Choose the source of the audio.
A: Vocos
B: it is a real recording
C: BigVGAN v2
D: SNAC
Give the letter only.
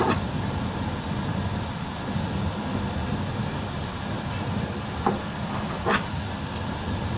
B